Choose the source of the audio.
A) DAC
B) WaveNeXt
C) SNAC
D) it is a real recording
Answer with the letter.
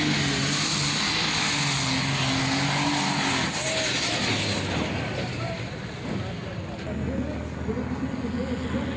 D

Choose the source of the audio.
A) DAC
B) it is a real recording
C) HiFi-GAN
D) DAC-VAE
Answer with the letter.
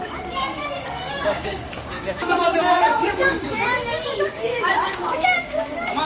A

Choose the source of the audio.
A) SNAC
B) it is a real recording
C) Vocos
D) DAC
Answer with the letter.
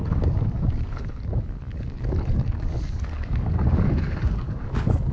D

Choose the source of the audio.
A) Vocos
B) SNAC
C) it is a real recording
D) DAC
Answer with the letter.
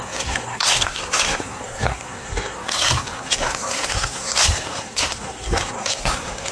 B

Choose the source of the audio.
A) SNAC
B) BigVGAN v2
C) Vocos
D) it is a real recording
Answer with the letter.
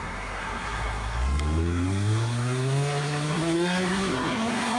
A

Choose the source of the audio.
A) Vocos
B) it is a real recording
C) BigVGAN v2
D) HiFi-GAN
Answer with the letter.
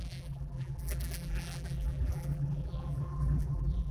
C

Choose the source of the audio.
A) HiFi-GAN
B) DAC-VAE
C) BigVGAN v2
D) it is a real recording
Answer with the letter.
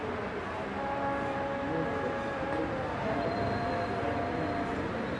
D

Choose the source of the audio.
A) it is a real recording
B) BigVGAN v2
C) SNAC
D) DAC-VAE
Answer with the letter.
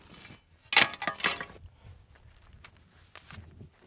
A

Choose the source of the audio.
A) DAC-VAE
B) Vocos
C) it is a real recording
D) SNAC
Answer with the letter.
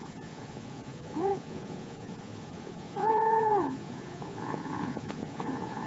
B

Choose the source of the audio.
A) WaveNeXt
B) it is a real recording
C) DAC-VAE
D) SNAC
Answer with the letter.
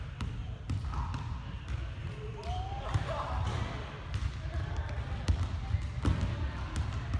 B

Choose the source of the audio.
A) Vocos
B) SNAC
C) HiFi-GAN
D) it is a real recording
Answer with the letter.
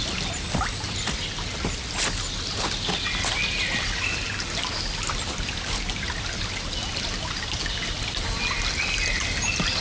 D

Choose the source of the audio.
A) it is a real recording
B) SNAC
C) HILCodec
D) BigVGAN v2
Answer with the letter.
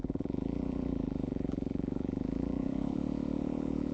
D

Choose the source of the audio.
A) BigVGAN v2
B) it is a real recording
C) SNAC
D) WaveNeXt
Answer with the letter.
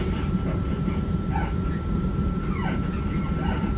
A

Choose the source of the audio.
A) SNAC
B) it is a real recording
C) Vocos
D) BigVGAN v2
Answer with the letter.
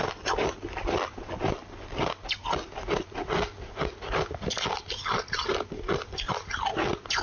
B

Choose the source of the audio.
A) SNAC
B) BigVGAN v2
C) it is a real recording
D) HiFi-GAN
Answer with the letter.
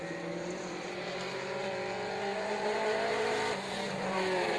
B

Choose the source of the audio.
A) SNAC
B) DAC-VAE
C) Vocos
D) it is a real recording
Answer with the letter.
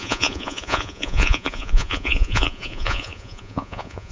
C